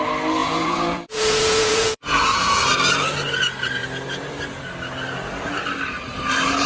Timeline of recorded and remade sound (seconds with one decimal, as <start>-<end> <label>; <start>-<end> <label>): 0.0-0.4 recorded; 0.4-2.6 remade; 2.6-6.7 recorded